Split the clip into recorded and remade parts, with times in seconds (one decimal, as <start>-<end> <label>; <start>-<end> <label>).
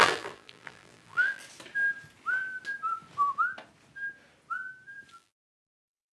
0.0-1.4 remade; 1.4-5.1 recorded; 5.1-6.2 remade